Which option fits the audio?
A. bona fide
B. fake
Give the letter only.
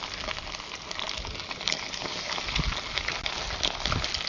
A